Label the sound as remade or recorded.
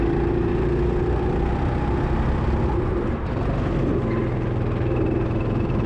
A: recorded